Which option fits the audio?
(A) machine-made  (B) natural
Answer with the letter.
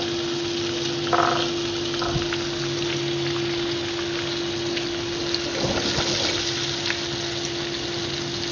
B